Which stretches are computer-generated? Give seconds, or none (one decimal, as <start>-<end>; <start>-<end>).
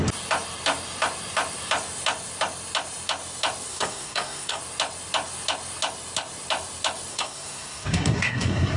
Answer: 3.7-4.6; 7.1-8.8